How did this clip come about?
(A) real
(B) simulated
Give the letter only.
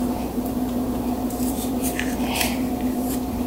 B